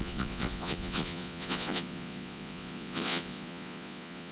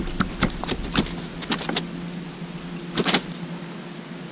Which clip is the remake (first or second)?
first